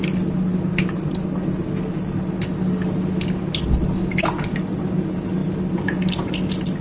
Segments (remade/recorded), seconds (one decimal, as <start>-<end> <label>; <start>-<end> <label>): 0.0-6.8 recorded